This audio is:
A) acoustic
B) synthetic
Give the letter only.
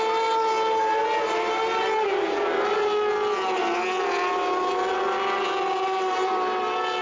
A